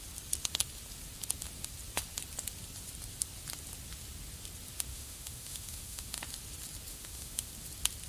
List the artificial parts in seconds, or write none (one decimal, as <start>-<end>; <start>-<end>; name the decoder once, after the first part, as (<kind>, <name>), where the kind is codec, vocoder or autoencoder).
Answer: 4.9-6.2 (autoencoder, DAC-VAE); 6.9-7.5